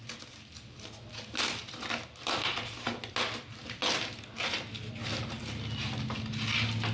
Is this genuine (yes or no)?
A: yes